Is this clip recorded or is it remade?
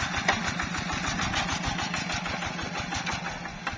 recorded